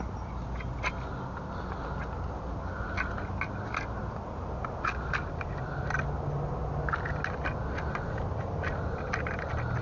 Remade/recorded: recorded